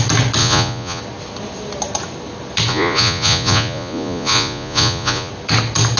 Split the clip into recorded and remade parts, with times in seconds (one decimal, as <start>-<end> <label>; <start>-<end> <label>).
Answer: 0.0-0.4 recorded; 0.4-1.0 remade; 1.0-2.7 recorded; 2.7-5.3 remade; 5.3-6.0 recorded